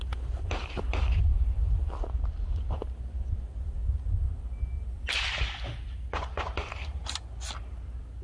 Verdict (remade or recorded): recorded